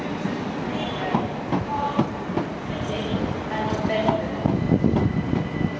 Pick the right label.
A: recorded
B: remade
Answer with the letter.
A